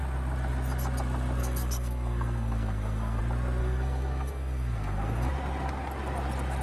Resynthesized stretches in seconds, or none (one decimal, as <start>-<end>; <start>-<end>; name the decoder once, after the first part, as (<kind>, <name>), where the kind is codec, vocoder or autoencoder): 1.4-3.2 (codec, SNAC); 3.6-5.3